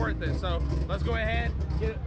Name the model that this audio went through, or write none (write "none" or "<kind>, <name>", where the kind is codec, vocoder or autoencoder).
none